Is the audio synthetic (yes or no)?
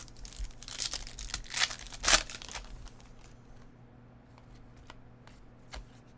no